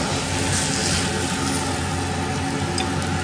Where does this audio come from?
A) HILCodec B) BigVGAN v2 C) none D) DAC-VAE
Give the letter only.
C